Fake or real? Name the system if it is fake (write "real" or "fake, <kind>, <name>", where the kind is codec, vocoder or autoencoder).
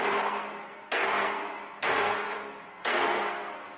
fake, codec, SNAC